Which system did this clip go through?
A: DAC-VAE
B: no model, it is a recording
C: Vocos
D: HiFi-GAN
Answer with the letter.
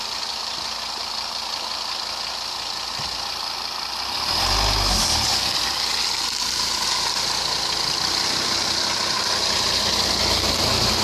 B